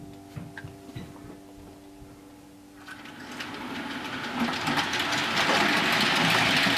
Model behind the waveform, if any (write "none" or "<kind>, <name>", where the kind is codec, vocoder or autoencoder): none